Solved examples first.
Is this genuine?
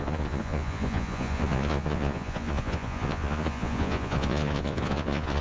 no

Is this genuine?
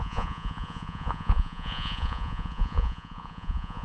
no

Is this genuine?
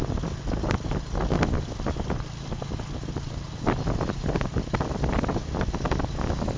yes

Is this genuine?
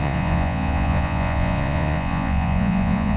no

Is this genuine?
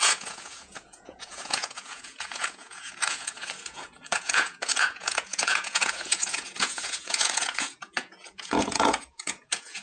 no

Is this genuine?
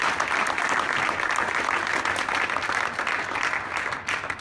yes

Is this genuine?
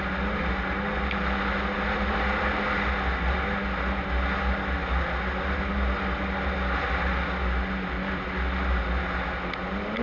yes